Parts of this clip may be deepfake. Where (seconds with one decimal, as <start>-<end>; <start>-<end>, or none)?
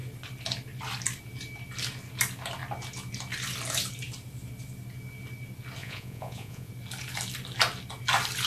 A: 5.8-6.7